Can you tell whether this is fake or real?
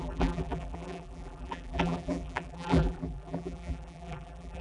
fake